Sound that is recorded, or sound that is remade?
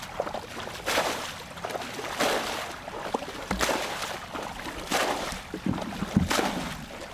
recorded